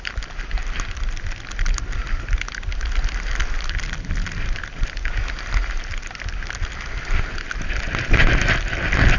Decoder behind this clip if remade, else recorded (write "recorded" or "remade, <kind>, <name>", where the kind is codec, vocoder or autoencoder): recorded